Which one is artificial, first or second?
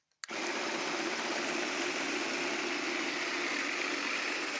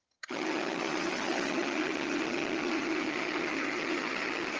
second